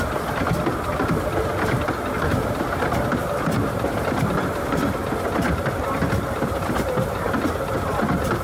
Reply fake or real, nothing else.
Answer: real